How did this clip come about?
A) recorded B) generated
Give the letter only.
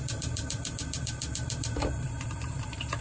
B